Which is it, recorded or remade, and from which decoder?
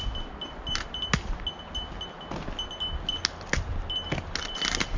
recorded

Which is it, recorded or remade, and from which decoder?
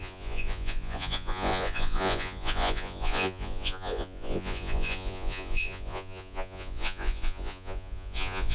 remade, vocoder, Vocos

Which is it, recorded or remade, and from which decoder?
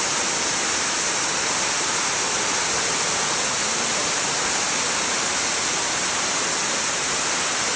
recorded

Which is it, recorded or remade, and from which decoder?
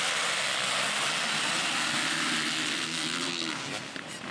recorded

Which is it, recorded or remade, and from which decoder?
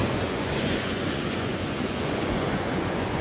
remade, vocoder, Vocos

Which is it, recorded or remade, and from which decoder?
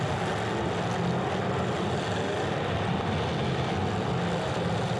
recorded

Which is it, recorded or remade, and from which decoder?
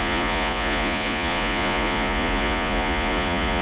remade, vocoder, Vocos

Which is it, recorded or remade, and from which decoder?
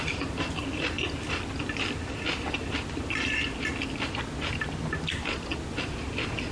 recorded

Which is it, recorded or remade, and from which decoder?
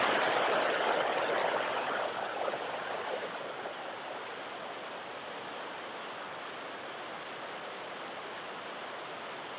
recorded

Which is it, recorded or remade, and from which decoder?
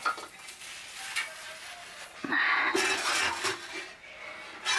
recorded